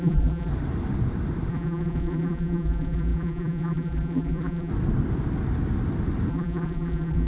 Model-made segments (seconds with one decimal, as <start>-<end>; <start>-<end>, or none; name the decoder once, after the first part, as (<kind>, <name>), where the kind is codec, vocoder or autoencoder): 0.0-0.5 (vocoder, BigVGAN v2); 1.5-4.7; 6.3-7.3